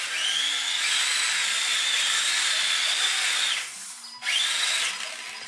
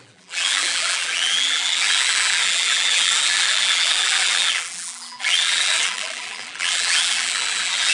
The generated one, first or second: second